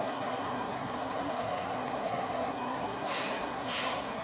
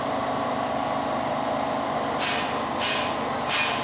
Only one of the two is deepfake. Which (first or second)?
first